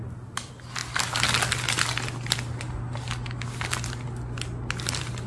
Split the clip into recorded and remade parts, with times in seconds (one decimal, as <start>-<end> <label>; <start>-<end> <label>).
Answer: 0.0-5.3 recorded

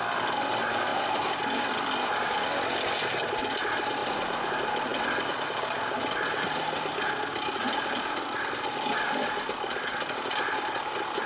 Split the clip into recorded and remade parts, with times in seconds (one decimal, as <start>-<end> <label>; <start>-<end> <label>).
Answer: 0.0-11.3 recorded

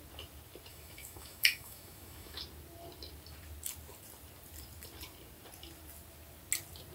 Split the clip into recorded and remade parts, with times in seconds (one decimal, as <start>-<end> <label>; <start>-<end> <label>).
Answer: 0.0-0.7 recorded; 0.7-2.4 remade; 2.4-6.9 recorded